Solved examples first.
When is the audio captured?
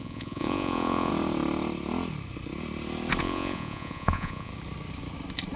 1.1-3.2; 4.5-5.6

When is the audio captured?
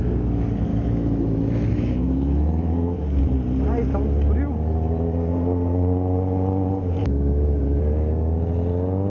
0.0-0.7; 3.2-7.0; 7.8-9.1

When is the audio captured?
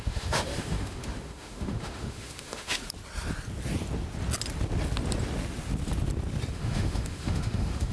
2.8-6.5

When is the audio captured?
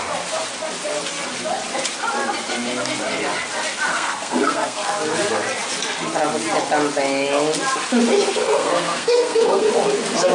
0.0-3.9; 4.9-8.4; 9.7-10.3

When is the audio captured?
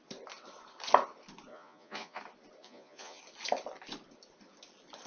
0.0-1.5; 2.2-2.6; 3.2-5.1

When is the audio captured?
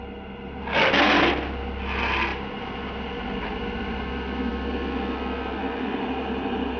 0.0-2.3; 3.1-6.8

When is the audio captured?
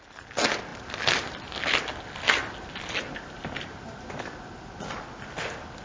0.0-5.8